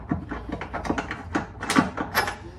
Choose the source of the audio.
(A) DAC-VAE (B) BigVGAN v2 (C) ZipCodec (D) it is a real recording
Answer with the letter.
D